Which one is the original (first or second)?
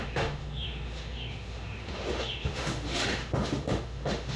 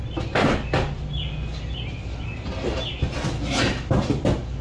second